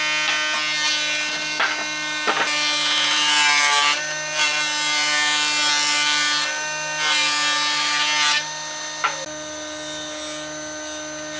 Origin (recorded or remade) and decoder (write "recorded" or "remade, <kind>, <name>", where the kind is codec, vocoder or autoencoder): recorded